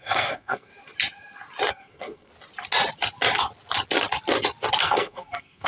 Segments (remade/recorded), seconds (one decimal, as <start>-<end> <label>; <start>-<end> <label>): 0.0-0.7 remade; 0.7-1.7 recorded; 1.7-2.3 remade; 2.3-4.8 recorded; 4.8-5.7 remade